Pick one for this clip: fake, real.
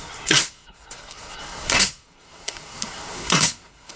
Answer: fake